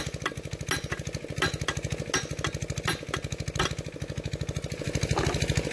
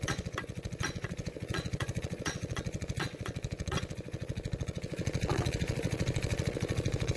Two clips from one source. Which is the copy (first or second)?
second